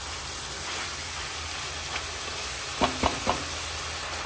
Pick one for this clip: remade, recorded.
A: recorded